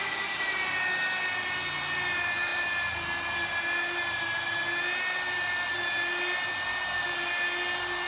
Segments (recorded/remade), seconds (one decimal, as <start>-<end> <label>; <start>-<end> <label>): 0.0-8.1 recorded